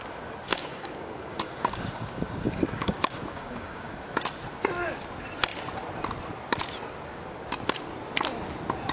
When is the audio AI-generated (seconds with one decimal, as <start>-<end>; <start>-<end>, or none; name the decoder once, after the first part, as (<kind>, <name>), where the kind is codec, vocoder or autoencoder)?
0.5-4.0 (codec, DAC)